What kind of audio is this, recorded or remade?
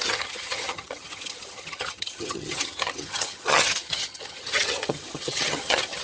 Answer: remade